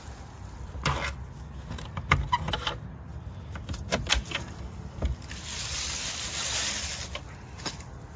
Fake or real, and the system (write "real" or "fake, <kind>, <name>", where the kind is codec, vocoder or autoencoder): real